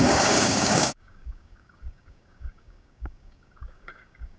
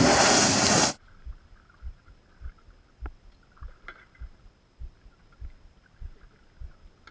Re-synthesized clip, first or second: first